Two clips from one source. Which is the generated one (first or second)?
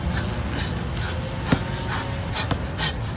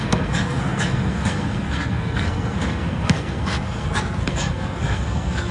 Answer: second